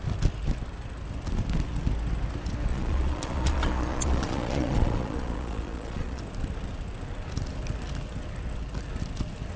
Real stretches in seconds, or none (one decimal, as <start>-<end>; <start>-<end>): 0.0-2.7; 6.2-9.6